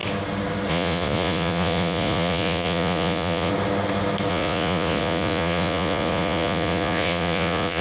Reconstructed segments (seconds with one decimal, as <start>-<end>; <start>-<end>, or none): 0.7-3.5; 4.3-7.8